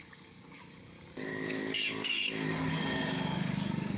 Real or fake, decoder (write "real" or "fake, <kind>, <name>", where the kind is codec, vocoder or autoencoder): fake, codec, DAC